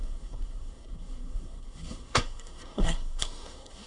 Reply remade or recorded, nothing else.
remade